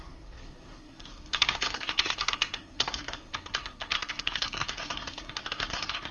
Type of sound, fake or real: fake